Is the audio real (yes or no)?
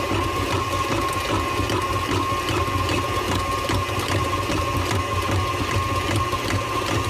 yes